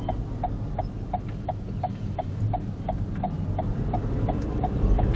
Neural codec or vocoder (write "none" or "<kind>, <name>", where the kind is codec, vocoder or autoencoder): none